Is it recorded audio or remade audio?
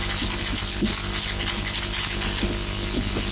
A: recorded